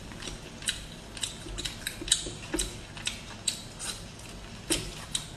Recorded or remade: recorded